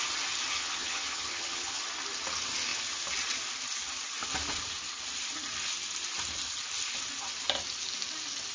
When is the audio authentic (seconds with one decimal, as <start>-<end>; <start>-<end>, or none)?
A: 0.0-0.5; 1.8-8.5